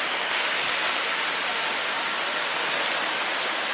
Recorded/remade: recorded